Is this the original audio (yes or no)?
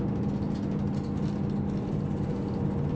yes